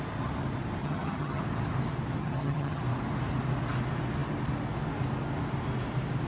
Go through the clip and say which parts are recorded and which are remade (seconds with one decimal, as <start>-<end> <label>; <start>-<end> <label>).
0.0-0.8 recorded; 0.8-1.4 remade; 1.4-2.2 recorded; 2.2-2.8 remade; 2.8-6.3 recorded